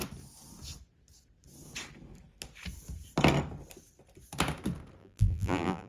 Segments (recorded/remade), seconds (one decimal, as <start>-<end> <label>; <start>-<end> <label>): 0.0-5.0 recorded; 5.0-5.9 remade